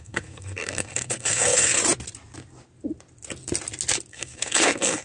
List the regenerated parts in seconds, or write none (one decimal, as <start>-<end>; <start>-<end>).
0.0-1.8; 4.1-5.0